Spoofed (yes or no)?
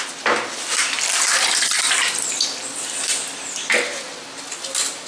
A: no